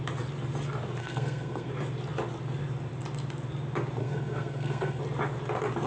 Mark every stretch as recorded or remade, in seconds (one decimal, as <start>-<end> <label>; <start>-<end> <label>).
0.0-1.0 recorded; 1.0-1.7 remade; 1.7-4.0 recorded; 4.0-5.0 remade; 5.0-5.9 recorded